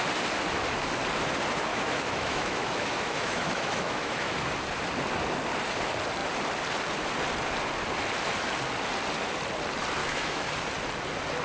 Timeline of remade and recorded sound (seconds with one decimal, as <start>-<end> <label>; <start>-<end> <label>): 0.0-1.7 recorded; 1.7-4.3 remade; 4.3-10.0 recorded; 10.0-10.5 remade; 10.5-11.4 recorded